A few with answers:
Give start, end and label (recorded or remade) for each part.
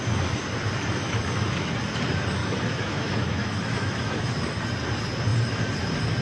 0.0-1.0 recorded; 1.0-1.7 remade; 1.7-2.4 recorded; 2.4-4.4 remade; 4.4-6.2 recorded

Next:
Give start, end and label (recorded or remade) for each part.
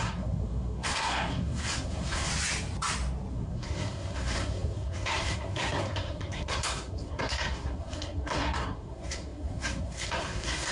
0.0-2.3 remade; 2.3-3.3 recorded; 3.3-10.7 remade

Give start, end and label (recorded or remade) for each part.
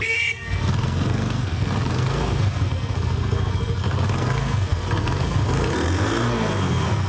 0.0-7.1 remade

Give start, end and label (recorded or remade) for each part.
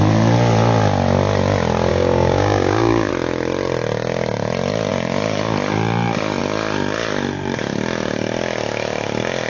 0.0-1.9 recorded; 1.9-3.1 remade; 3.1-9.5 recorded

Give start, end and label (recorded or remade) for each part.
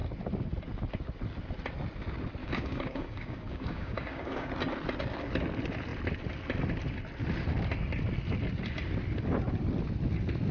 0.0-2.4 recorded; 2.4-4.5 remade; 4.5-10.5 recorded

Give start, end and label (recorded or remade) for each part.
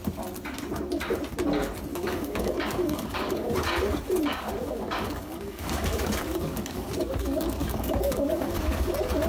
0.0-1.9 recorded; 1.9-3.5 remade; 3.5-4.3 recorded; 4.3-8.9 remade; 8.9-9.3 recorded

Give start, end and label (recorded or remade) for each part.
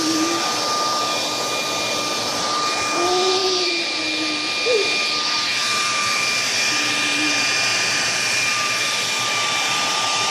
0.0-3.4 recorded; 3.4-4.0 remade; 4.0-5.6 recorded; 5.6-6.3 remade; 6.3-7.7 recorded; 7.7-9.0 remade; 9.0-10.3 recorded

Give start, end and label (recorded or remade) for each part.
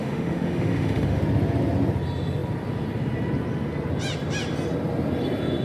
0.0-1.2 remade; 1.2-5.6 recorded